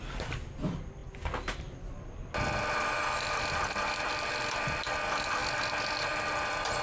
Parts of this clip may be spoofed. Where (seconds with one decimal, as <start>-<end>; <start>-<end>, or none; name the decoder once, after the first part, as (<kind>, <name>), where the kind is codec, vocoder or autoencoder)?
0.0-1.0 (vocoder, BigVGAN v2); 3.2-5.4; 6.0-6.8